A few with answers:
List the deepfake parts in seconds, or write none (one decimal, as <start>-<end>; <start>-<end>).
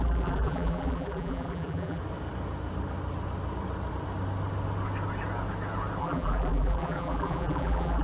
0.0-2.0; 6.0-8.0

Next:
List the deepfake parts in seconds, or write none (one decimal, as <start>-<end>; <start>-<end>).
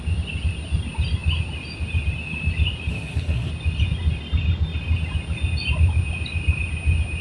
2.9-3.5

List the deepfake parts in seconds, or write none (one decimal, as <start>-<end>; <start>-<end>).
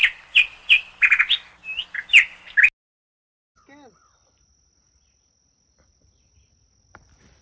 0.0-1.2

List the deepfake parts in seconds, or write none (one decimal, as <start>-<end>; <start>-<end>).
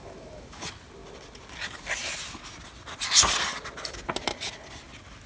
0.0-0.6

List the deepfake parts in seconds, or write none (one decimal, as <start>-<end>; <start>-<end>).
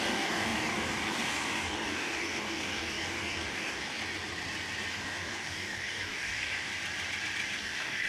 0.0-4.0; 4.9-6.7; 7.6-8.1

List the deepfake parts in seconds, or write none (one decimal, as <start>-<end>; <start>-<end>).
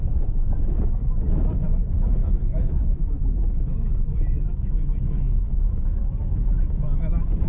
2.2-6.1